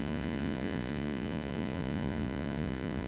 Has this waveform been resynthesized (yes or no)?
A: yes